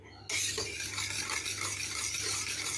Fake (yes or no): no